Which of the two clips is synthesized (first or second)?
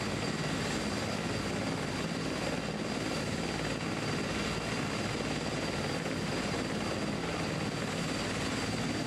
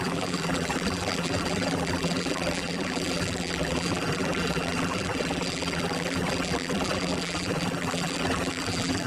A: second